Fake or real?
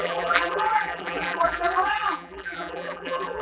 fake